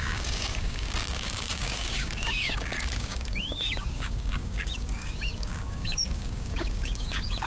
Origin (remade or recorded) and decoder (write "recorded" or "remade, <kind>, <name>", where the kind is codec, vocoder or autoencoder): remade, codec, DAC